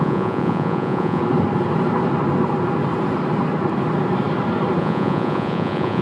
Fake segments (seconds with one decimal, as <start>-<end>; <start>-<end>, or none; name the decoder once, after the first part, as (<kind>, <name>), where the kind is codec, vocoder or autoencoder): 0.0-1.2 (vocoder, Vocos); 4.8-6.0